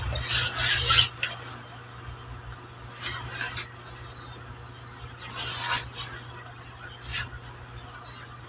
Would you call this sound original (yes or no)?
yes